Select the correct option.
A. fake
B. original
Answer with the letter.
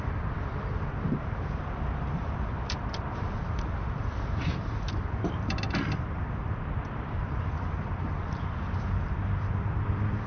A